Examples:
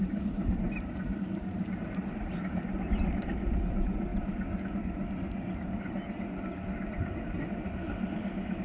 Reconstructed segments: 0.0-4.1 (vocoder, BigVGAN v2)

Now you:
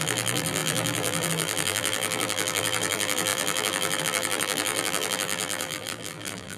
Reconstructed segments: 0.0-6.6 (vocoder, BigVGAN v2)

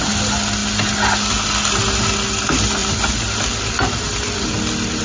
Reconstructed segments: 2.8-5.0 (vocoder, BigVGAN v2)

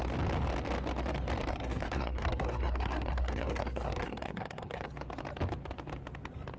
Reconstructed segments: 1.5-4.9 (codec, SNAC)